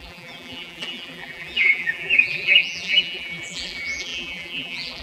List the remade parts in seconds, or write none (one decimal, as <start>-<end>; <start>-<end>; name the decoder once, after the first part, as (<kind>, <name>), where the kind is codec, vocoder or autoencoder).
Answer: 0.0-5.0 (vocoder, BigVGAN v2)